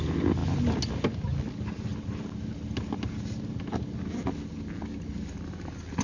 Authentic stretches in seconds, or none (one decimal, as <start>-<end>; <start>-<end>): 0.0-6.0